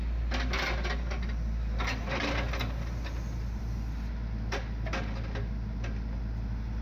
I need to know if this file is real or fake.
real